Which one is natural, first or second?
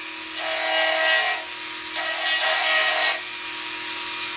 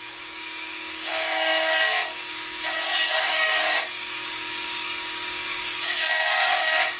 first